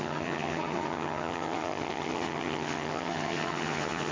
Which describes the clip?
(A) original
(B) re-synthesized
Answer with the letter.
B